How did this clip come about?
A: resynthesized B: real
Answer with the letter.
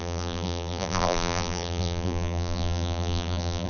A